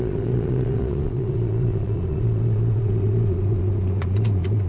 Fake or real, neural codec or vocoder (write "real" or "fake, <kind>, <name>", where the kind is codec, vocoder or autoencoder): fake, vocoder, Vocos